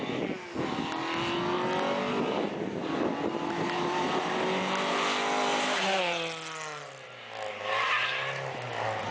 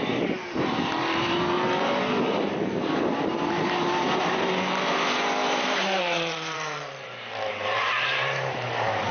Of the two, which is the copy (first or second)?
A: second